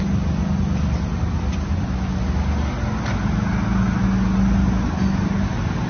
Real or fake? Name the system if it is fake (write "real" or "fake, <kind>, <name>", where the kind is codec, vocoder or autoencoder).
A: real